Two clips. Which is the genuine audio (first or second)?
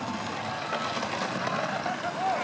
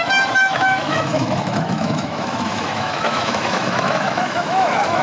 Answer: first